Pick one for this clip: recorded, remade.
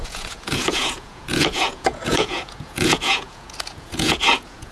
remade